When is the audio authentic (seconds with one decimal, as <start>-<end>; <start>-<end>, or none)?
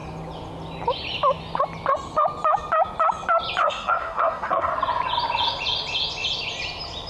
0.0-3.6; 4.7-7.1